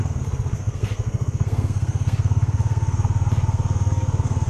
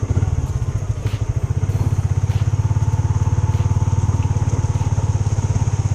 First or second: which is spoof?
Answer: first